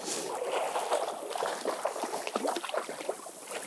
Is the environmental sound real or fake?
real